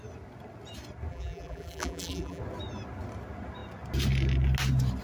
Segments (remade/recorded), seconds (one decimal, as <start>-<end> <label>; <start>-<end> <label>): 0.0-1.1 recorded; 1.1-2.4 remade; 2.4-5.0 recorded